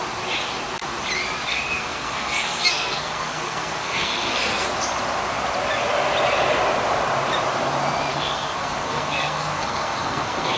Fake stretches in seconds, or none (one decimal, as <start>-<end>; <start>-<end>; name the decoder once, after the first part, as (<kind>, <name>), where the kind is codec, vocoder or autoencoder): 1.5-4.7 (codec, SNAC); 8.1-10.6